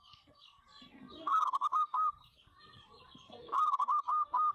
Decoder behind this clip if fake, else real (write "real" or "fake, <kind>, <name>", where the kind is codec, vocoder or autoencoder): fake, codec, SNAC